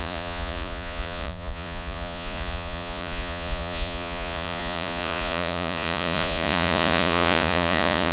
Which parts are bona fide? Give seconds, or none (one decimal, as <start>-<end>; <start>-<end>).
none